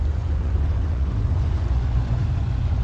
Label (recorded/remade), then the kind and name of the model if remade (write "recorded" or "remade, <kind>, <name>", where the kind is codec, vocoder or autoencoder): remade, vocoder, Vocos